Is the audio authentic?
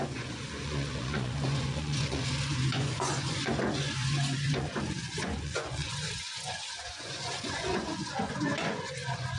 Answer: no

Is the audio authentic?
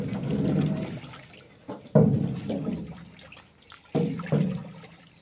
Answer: yes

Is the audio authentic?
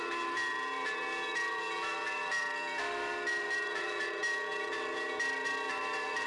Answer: no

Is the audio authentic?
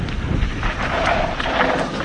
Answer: yes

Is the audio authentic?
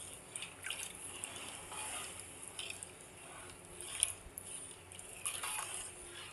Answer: yes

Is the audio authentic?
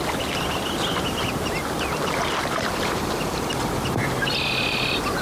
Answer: no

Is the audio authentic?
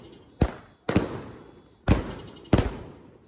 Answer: yes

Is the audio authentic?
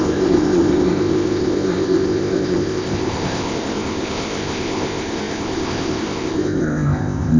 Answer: no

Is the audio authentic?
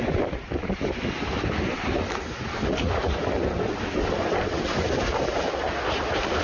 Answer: no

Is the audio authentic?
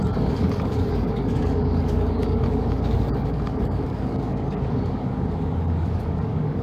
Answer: no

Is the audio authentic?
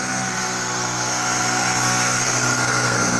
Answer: no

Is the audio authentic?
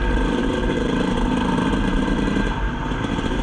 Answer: no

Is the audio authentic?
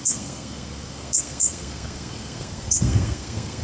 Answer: no